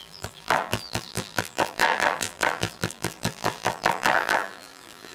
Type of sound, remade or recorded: remade